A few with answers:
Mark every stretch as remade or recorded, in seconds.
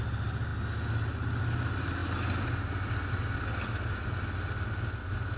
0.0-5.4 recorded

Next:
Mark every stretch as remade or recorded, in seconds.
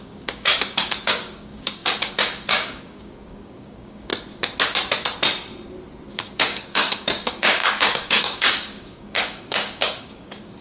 0.0-4.1 remade; 4.1-6.1 recorded; 6.1-10.6 remade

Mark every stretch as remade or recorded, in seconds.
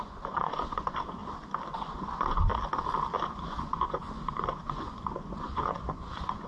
0.0-1.2 remade; 1.2-1.7 recorded; 1.7-2.5 remade; 2.5-3.3 recorded; 3.3-6.5 remade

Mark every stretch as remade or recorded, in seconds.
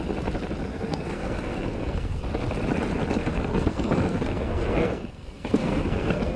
0.0-0.7 recorded; 0.7-2.2 remade; 2.2-3.2 recorded; 3.2-6.4 remade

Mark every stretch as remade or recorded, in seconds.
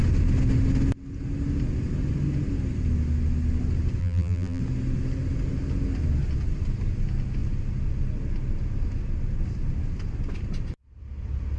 0.0-4.0 recorded; 4.0-4.6 remade; 4.6-11.6 recorded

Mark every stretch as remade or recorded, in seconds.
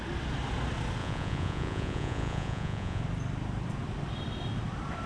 0.0-1.0 recorded; 1.0-3.0 remade; 3.0-5.1 recorded